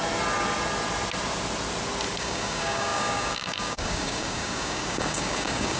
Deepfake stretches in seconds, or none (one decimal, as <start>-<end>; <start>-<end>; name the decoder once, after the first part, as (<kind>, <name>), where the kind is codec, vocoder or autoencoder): 2.2-5.8 (codec, DAC)